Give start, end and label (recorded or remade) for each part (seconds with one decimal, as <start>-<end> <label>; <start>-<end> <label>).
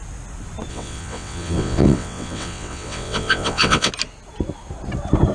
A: 0.0-0.7 recorded; 0.7-3.9 remade; 3.9-5.3 recorded